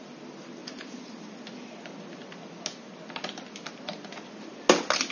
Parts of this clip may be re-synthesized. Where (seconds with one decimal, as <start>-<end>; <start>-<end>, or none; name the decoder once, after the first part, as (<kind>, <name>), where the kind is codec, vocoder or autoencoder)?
none